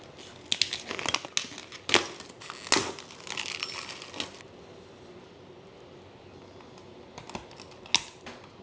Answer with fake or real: real